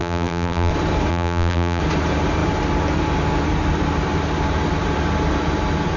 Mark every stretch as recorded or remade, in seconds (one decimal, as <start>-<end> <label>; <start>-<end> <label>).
0.0-0.7 remade; 0.7-1.1 recorded; 1.1-1.8 remade; 1.8-6.0 recorded